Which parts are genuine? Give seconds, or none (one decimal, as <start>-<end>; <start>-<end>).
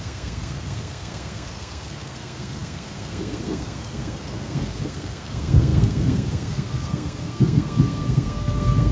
none